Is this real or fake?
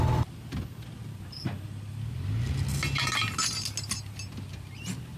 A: real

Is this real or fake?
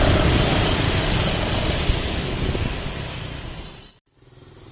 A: fake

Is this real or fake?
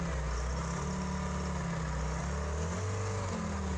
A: real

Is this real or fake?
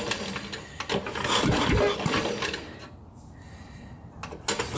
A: real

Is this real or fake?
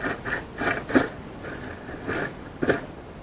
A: real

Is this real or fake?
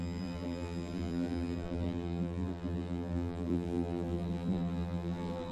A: fake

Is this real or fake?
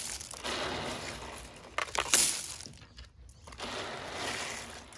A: real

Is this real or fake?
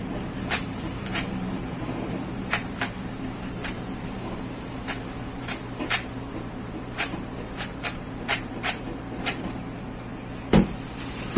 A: fake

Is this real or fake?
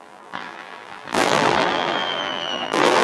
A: fake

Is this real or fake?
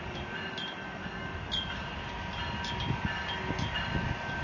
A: real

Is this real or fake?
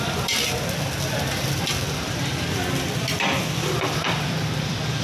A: fake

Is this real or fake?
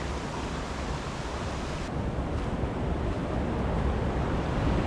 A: real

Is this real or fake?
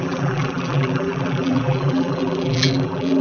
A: fake